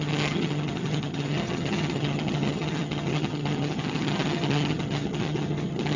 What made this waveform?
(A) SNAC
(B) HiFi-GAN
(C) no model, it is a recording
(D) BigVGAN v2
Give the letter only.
B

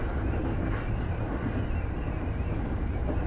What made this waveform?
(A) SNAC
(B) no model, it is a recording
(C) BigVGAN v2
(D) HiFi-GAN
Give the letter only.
B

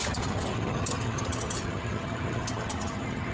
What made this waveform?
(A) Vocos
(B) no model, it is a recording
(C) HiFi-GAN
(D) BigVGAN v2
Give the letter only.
C